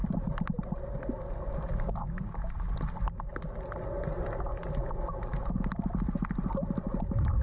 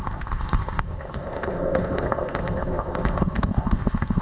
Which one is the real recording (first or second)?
first